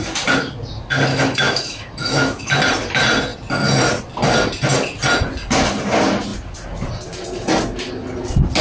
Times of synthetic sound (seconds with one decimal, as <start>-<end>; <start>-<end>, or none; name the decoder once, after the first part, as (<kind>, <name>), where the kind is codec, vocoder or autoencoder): 1.1-2.5 (autoencoder, DAC-VAE)

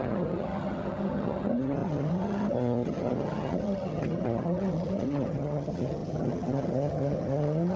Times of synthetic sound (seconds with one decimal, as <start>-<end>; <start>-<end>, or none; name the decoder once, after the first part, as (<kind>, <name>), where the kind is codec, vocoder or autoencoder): 0.0-7.8 (vocoder, HiFi-GAN)

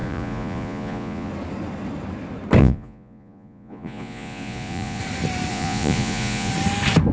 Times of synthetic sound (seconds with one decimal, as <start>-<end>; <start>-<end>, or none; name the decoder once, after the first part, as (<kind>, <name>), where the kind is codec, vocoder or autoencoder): 0.0-1.3 (vocoder, Vocos); 2.6-5.0; 5.5-6.5

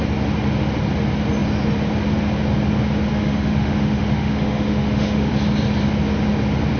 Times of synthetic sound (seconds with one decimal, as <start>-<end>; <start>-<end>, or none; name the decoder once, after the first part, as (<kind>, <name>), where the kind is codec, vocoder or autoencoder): 3.1-5.3 (autoencoder, DAC-VAE)